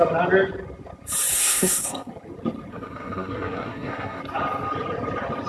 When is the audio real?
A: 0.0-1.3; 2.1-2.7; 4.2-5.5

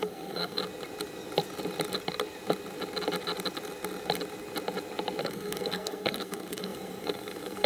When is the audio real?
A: 0.6-5.2